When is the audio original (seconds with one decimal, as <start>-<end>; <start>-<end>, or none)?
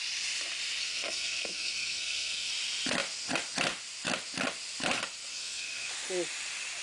0.0-0.8; 2.5-5.3; 5.9-6.8